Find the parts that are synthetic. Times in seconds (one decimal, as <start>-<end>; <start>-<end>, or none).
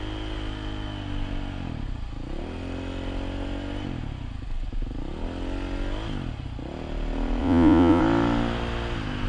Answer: 7.4-8.0